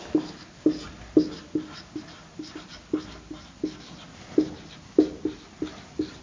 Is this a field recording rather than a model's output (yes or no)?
yes